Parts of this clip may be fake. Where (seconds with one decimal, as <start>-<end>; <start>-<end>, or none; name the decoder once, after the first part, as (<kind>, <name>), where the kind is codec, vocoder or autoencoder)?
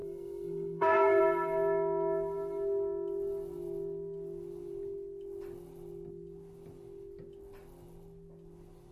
0.0-1.2 (codec, SNAC)